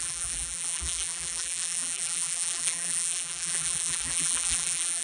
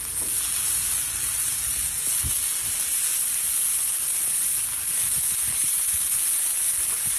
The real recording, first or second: second